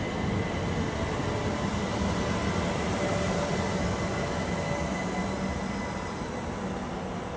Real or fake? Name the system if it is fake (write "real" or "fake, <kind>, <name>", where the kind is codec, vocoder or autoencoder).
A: real